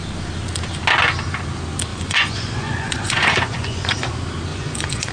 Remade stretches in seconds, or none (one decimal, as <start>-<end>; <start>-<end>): 1.9-4.1; 4.5-5.1